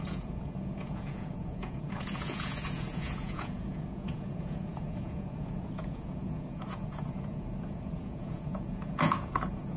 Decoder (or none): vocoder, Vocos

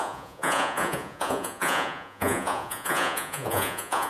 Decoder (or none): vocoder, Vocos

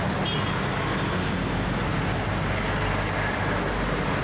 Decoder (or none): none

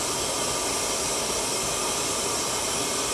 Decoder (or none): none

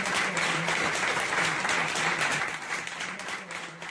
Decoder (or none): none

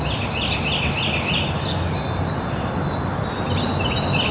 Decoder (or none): none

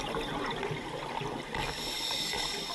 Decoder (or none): none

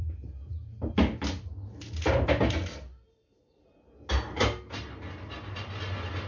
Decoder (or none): none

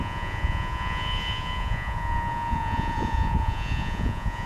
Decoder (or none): vocoder, Vocos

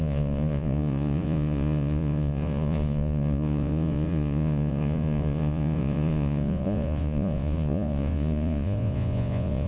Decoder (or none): vocoder, Vocos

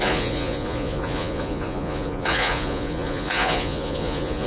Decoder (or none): vocoder, Vocos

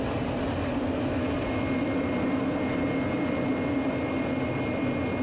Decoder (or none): none